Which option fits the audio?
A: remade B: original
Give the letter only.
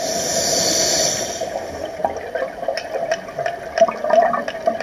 B